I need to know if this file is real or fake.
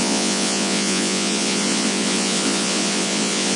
fake